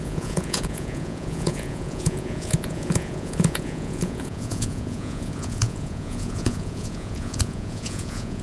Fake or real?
fake